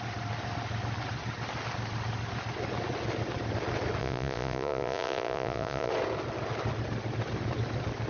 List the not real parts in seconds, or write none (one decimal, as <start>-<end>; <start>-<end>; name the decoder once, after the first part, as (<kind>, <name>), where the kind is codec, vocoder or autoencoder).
4.0-5.9 (vocoder, Vocos)